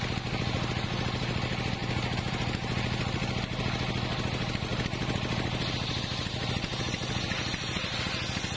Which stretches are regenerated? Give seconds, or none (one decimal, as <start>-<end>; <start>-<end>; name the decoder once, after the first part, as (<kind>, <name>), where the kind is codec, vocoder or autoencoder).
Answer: none